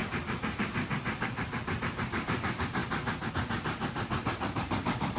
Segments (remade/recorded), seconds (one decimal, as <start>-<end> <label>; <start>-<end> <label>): 0.0-2.8 remade; 2.8-3.3 recorded; 3.3-5.2 remade